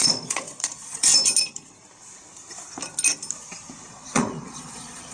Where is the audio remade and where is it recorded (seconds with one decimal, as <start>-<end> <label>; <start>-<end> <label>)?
0.0-1.1 remade; 1.1-3.9 recorded; 3.9-5.1 remade